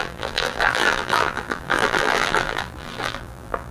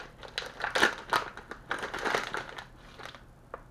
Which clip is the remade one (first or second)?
first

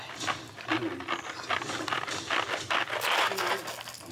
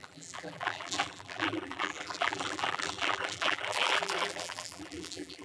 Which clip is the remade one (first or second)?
second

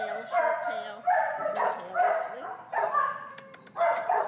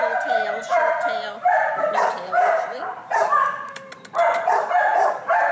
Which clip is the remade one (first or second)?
second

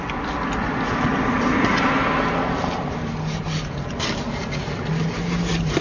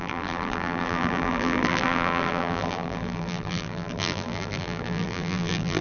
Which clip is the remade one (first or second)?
second